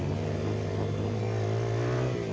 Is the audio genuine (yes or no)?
yes